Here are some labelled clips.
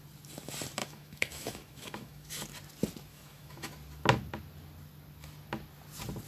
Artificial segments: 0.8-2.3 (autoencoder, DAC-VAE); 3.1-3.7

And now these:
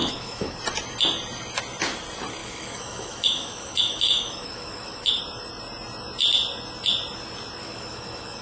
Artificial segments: 0.0-0.6 (autoencoder, DAC-VAE); 2.4-5.2; 7.6-8.4